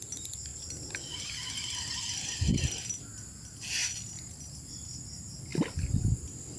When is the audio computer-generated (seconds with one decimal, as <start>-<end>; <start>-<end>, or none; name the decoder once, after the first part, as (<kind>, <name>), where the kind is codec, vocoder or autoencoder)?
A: none